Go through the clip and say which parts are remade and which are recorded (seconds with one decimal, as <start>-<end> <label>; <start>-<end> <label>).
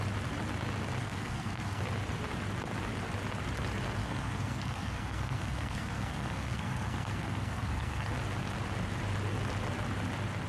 0.0-1.0 recorded; 1.0-1.8 remade; 1.8-4.0 recorded; 4.0-8.1 remade; 8.1-10.5 recorded